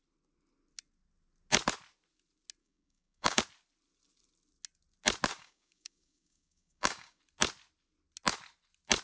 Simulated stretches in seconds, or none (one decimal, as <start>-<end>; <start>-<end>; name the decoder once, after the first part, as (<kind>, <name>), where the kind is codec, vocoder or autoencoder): 2.6-3.4 (codec, DAC); 5.3-7.2